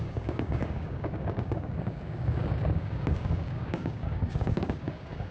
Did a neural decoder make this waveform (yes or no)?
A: yes